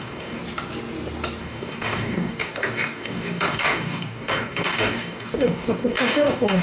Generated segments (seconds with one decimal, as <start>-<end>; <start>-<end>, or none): 0.0-0.4; 1.4-6.6